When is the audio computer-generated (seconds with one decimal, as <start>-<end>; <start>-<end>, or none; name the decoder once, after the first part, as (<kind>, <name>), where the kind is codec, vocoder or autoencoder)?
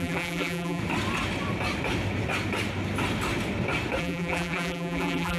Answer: 0.0-0.8 (vocoder, BigVGAN v2); 4.0-5.4